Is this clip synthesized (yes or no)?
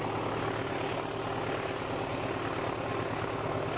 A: no